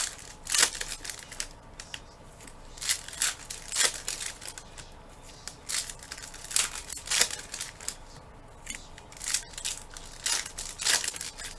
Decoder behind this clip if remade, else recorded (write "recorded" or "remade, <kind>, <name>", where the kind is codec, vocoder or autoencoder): recorded